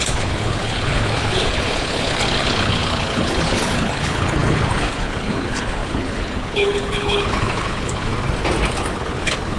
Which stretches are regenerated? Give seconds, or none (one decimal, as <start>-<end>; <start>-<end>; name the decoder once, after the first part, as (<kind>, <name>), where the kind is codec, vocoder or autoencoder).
0.0-8.1 (codec, HILCodec); 8.7-9.6